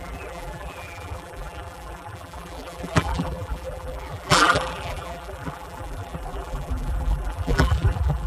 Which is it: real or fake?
fake